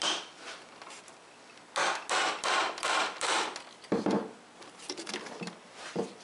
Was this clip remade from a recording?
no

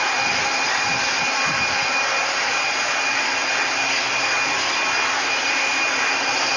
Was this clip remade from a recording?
no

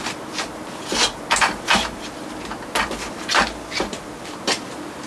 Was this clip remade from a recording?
no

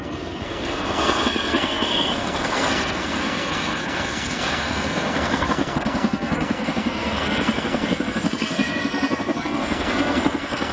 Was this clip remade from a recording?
yes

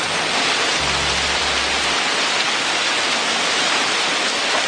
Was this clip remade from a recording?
no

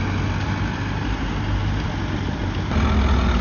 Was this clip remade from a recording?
no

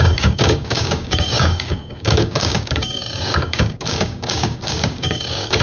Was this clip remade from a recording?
yes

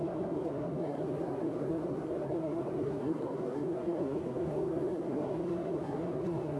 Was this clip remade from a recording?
yes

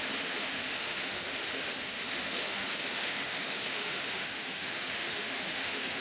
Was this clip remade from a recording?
yes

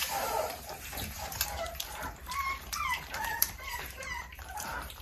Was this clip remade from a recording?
yes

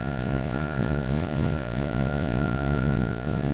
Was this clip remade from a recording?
yes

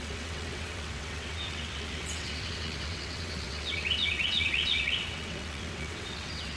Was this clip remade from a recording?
yes